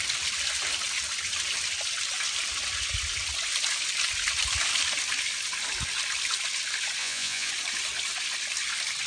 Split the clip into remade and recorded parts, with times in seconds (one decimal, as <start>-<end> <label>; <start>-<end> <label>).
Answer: 0.0-7.0 recorded; 7.0-7.5 remade; 7.5-9.1 recorded